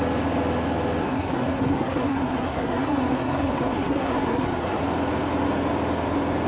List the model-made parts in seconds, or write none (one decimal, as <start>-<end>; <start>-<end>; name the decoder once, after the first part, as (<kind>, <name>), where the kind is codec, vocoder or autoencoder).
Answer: 1.0-4.8 (codec, SNAC)